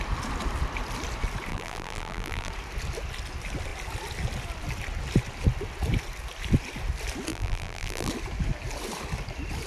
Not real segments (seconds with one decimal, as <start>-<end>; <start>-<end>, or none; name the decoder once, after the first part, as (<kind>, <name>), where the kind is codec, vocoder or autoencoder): 1.5-2.5 (vocoder, BigVGAN v2); 7.3-8.1